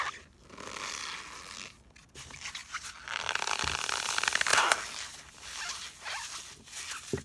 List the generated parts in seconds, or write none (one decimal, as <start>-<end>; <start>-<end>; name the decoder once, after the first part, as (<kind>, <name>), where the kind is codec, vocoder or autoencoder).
2.6-3.8 (vocoder, BigVGAN v2); 4.5-5.8